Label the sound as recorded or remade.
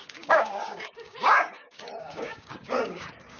remade